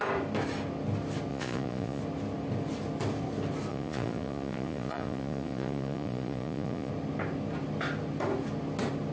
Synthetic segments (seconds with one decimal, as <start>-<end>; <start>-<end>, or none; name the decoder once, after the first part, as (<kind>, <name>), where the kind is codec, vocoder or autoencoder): 1.3-2.0 (vocoder, Vocos); 3.7-6.9